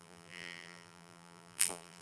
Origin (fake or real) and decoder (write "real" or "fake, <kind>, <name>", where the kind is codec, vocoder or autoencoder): fake, vocoder, BigVGAN v2